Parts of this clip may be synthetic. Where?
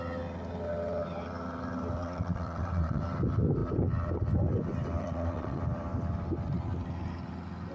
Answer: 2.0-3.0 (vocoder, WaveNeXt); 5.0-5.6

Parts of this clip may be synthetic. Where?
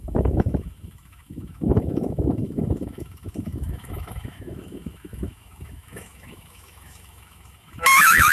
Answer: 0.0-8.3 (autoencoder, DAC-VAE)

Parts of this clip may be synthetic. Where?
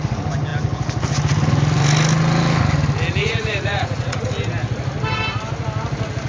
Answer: 3.2-4.3 (vocoder, Vocos)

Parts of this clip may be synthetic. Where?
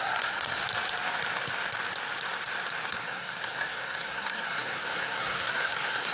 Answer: 0.0-0.6 (codec, SNAC); 2.9-6.1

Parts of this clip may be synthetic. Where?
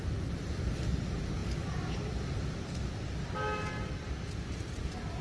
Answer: none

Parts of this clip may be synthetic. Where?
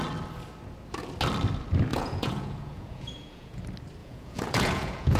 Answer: 1.9-3.6 (vocoder, Vocos); 4.0-5.2